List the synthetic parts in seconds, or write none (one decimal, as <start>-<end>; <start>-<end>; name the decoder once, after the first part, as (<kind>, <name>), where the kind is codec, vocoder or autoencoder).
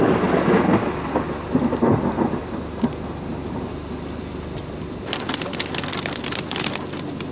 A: 2.4-3.7 (vocoder, BigVGAN v2)